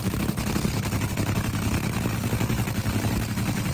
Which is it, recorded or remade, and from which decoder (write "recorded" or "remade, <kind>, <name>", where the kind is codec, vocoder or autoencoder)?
recorded